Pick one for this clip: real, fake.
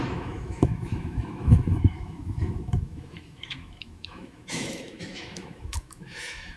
fake